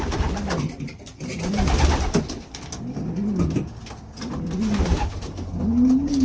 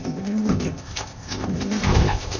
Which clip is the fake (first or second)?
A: second